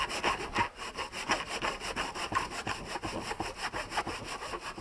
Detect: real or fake real